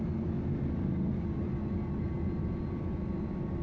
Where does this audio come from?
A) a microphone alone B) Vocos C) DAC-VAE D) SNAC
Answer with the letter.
A